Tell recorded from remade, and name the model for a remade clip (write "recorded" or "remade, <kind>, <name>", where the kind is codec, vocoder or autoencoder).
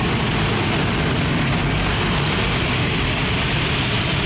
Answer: remade, vocoder, BigVGAN v2